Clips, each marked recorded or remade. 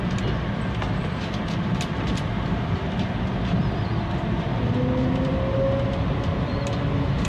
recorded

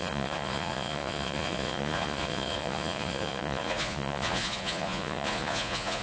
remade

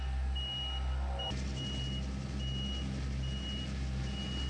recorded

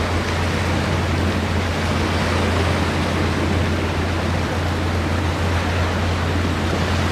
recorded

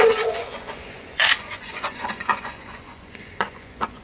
remade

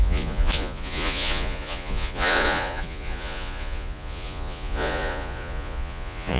remade